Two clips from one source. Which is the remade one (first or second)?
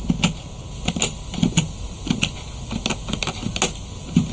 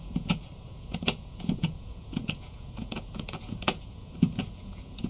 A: second